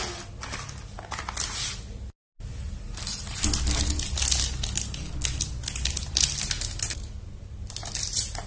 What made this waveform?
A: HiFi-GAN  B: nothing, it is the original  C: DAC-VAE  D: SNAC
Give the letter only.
B